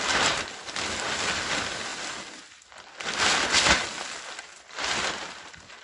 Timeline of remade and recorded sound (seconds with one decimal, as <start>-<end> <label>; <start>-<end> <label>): 0.0-5.8 recorded